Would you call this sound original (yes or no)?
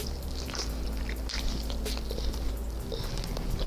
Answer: yes